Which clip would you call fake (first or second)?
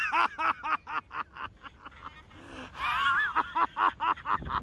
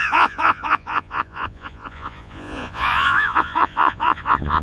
second